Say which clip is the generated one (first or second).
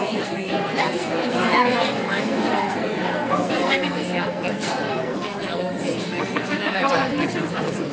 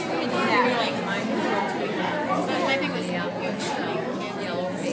first